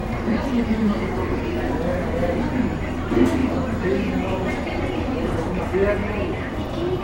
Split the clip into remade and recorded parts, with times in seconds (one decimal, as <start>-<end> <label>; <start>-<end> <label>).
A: 0.0-1.4 remade; 1.4-1.9 recorded; 1.9-2.8 remade; 2.8-3.4 recorded; 3.4-5.6 remade; 5.6-6.0 recorded; 6.0-6.6 remade; 6.6-7.0 recorded